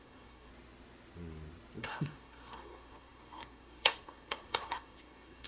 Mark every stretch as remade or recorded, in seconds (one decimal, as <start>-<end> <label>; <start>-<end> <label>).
0.0-0.5 remade; 0.5-1.8 recorded; 1.8-5.5 remade